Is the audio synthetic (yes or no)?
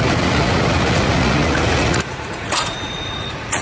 yes